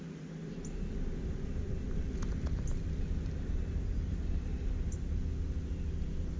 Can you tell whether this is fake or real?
real